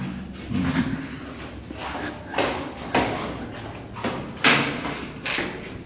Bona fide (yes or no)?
yes